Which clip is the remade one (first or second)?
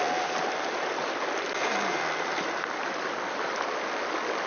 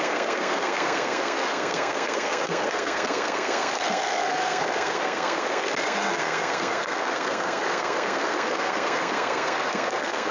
second